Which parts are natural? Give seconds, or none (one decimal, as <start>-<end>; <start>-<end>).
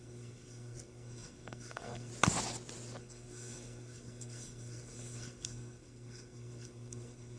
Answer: 2.1-3.0